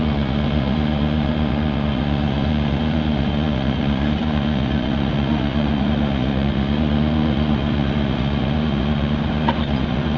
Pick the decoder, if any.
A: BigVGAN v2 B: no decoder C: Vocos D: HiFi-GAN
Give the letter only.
C